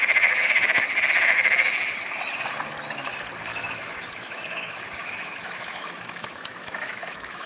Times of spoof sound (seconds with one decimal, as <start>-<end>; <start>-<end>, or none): 3.5-7.5